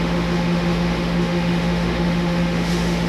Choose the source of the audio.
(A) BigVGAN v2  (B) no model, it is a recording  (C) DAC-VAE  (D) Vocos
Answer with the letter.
C